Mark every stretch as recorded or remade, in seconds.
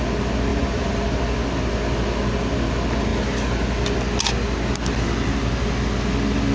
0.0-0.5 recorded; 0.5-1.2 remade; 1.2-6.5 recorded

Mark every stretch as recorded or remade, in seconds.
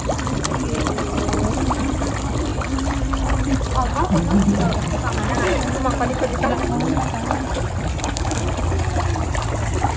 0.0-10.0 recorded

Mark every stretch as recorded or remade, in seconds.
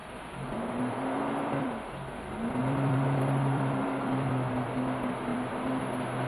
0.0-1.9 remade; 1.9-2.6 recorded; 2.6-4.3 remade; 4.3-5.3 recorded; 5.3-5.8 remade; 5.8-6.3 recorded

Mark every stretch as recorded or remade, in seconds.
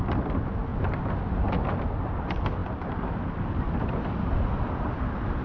0.0-0.7 remade; 0.7-2.0 recorded; 2.0-5.4 remade